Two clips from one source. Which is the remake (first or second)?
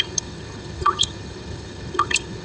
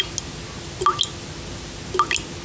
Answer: first